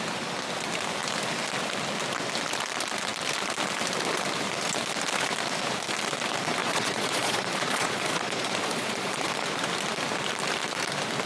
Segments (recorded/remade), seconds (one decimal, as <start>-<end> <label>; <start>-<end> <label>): 0.0-6.6 recorded; 6.6-9.3 remade; 9.3-11.3 recorded